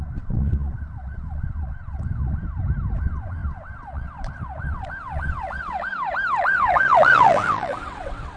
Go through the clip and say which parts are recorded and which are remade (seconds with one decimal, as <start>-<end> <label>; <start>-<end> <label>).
0.0-2.4 remade; 2.4-3.0 recorded; 3.0-5.9 remade; 5.9-6.4 recorded; 6.4-8.4 remade